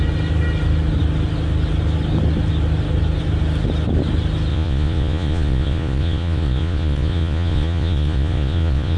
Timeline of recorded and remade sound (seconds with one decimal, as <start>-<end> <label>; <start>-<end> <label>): 0.0-4.5 recorded; 4.5-9.0 remade